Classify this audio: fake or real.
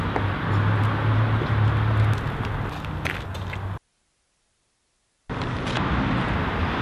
real